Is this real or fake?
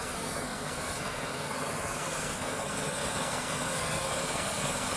fake